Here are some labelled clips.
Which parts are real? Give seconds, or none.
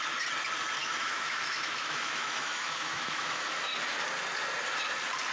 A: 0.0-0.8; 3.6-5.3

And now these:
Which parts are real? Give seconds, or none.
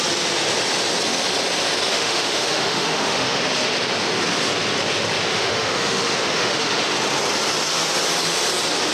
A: 0.0-1.9; 3.4-5.3; 6.8-8.9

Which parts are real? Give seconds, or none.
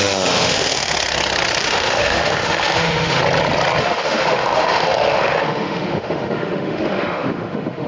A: 0.9-1.6; 3.2-3.8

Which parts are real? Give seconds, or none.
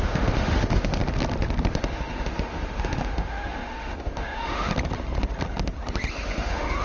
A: 1.0-1.7; 4.7-6.1